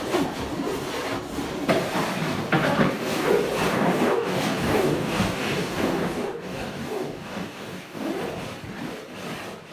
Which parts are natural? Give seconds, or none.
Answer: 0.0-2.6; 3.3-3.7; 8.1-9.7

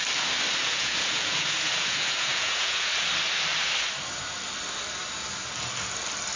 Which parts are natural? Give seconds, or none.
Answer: 0.0-0.6; 3.1-6.4

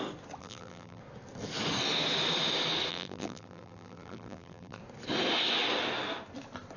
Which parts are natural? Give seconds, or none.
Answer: 0.0-0.4; 1.0-2.9; 4.8-6.8